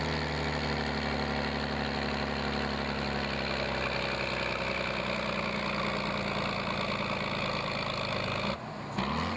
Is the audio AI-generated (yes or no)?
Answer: no